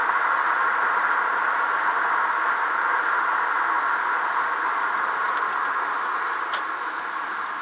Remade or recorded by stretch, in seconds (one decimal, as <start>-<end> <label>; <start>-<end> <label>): 0.0-7.6 recorded